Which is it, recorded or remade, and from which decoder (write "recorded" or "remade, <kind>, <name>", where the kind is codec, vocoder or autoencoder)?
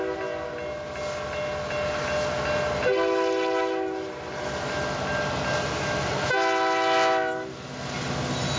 recorded